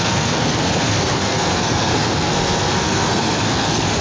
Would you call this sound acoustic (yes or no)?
no